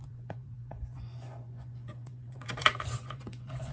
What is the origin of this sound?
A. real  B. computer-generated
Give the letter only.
B